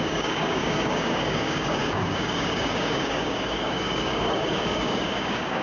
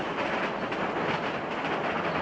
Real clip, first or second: second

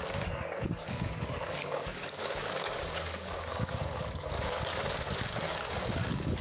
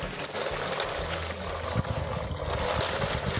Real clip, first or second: second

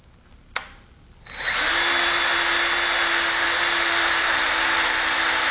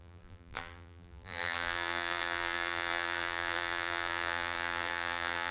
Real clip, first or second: first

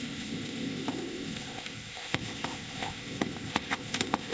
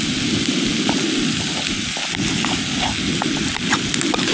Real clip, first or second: second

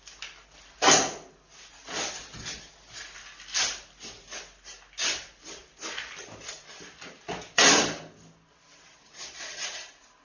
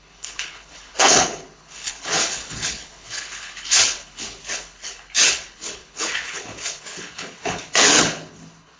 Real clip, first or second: first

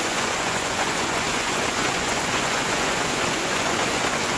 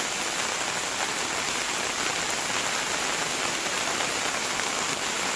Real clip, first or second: second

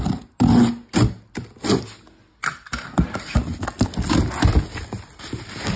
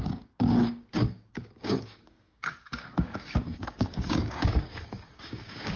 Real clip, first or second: first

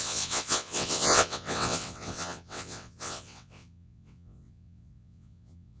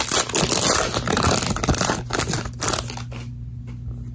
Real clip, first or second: second